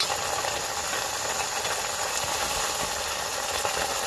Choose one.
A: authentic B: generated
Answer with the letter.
A